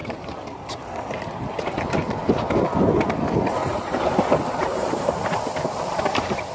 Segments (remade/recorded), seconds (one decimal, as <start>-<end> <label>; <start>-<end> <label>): 0.0-0.7 remade; 0.7-3.6 recorded; 3.6-6.5 remade